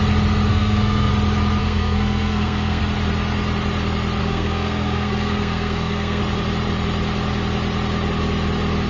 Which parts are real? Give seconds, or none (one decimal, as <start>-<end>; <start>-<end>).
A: 0.0-0.5; 1.1-1.6; 2.8-4.2; 6.2-8.9